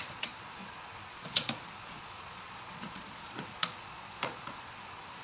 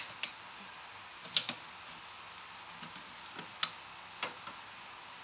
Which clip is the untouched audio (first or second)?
second